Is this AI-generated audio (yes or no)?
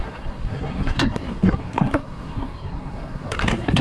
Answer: yes